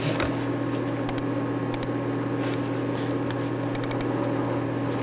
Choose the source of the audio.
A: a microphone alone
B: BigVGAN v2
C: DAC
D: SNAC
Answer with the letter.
A